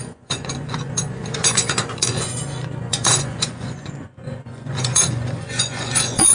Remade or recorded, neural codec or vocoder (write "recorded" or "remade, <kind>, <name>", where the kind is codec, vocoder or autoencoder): remade, vocoder, Vocos